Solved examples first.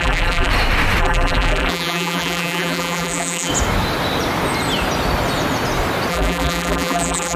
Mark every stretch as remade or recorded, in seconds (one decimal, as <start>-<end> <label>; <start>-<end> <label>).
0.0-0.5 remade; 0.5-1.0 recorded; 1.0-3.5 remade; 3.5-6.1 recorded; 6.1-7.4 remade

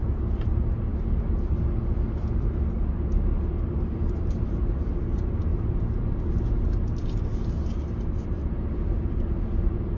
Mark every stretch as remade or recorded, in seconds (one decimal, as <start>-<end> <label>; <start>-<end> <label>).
0.0-10.0 recorded

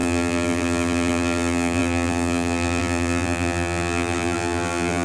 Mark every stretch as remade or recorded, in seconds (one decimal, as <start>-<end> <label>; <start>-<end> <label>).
0.0-5.0 remade

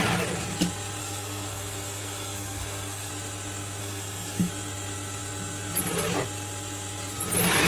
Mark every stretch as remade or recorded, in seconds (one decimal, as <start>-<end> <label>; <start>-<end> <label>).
0.0-1.0 recorded; 1.0-3.1 remade; 3.1-3.8 recorded; 3.8-4.5 remade; 4.5-7.7 recorded

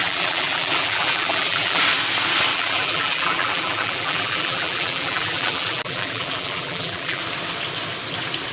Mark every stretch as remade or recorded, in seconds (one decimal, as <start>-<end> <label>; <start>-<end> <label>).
0.0-1.8 remade; 1.8-2.5 recorded; 2.5-7.2 remade; 7.2-8.5 recorded

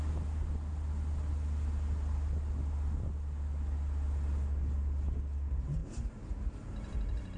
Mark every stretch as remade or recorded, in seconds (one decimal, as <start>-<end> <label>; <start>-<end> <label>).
0.0-7.4 recorded

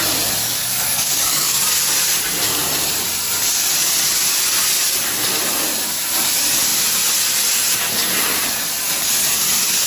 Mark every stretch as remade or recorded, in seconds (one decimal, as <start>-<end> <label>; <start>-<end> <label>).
0.0-0.4 recorded; 0.4-1.6 remade; 1.6-9.9 recorded

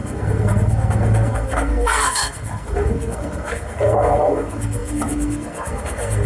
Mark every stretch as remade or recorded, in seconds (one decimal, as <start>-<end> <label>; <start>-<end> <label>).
0.0-6.3 remade